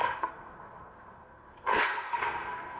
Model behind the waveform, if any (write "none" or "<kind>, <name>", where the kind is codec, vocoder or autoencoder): codec, SNAC